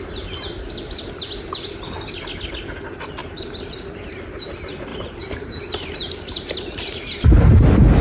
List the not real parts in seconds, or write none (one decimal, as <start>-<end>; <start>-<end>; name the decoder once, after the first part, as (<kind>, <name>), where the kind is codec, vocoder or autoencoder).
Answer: 3.2-4.0 (vocoder, BigVGAN v2); 4.9-6.8